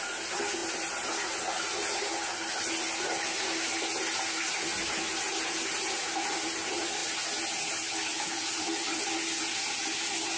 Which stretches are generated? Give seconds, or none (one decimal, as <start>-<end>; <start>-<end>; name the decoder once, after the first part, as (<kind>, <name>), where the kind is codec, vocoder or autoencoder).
none